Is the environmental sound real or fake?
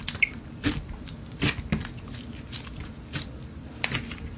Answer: real